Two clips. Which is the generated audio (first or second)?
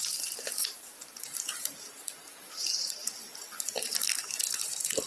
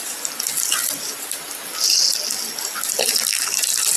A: first